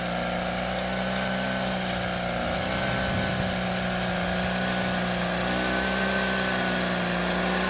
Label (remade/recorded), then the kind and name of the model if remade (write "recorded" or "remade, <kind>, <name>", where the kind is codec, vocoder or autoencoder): recorded